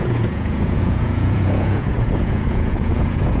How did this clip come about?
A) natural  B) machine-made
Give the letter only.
B